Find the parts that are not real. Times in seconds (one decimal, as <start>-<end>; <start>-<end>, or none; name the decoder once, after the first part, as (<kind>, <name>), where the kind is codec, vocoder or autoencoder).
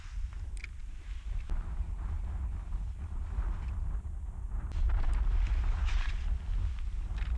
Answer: none